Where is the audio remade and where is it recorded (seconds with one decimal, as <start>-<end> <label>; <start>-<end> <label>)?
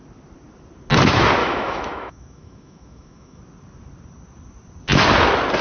0.0-1.4 recorded; 1.4-3.4 remade; 3.4-5.6 recorded